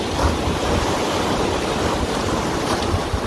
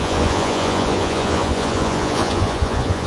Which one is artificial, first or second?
second